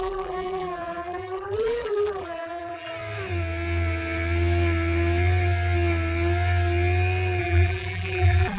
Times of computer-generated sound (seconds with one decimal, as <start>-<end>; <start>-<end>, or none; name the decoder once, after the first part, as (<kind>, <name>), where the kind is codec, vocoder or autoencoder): 0.0-2.9 (vocoder, BigVGAN v2); 7.4-8.6